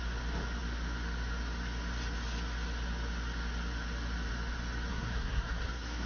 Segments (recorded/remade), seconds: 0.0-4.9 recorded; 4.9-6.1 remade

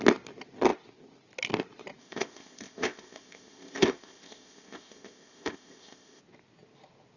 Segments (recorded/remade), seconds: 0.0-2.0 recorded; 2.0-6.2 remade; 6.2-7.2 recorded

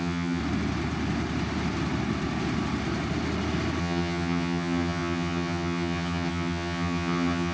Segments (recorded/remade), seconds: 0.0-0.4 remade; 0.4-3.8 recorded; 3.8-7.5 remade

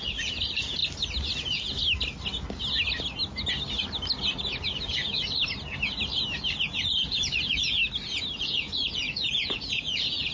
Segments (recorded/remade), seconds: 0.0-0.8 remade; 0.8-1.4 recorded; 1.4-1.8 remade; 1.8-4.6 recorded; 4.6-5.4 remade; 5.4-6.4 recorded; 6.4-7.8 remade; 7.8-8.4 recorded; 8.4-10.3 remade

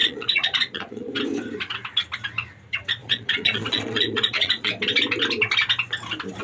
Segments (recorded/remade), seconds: 0.0-1.1 remade; 1.1-3.0 recorded; 3.0-4.7 remade; 4.7-6.4 recorded

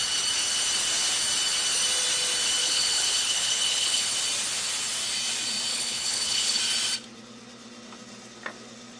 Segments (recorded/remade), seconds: 0.0-2.6 recorded; 2.6-4.1 remade; 4.1-5.7 recorded; 5.7-6.6 remade; 6.6-9.0 recorded

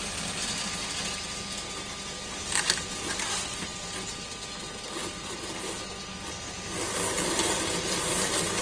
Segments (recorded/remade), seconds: 0.0-8.6 recorded